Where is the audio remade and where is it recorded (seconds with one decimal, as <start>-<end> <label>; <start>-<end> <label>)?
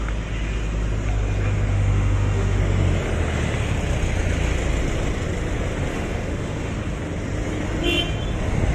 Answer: 0.0-1.7 recorded; 1.7-2.6 remade; 2.6-5.9 recorded; 5.9-6.7 remade; 6.7-8.7 recorded